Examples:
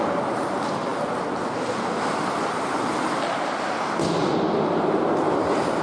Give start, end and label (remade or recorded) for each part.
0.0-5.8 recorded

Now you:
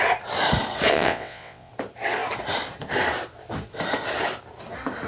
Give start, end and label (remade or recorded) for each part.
0.0-0.9 recorded; 0.9-1.7 remade; 1.7-5.1 recorded